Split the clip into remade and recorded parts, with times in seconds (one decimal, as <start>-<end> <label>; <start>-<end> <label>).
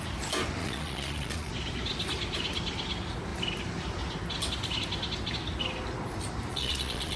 0.0-0.6 recorded; 0.6-1.5 remade; 1.5-6.5 recorded; 6.5-7.2 remade